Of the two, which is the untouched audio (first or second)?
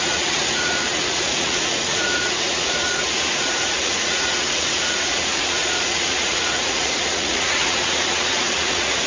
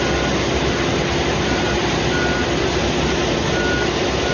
second